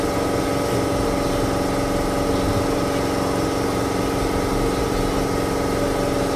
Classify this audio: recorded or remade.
recorded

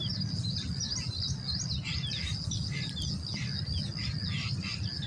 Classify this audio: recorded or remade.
recorded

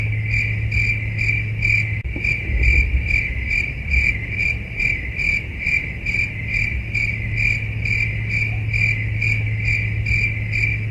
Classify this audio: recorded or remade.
recorded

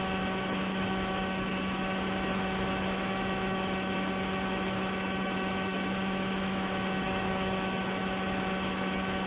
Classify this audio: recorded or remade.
remade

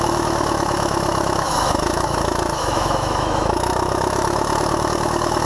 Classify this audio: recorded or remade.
remade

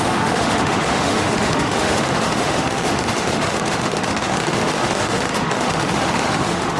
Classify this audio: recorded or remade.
remade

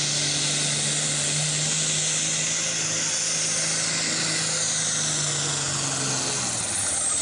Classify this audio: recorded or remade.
recorded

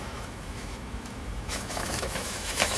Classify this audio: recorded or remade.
remade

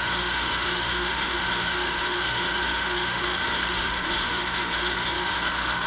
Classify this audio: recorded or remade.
remade